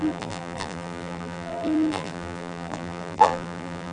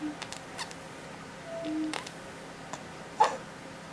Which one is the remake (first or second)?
first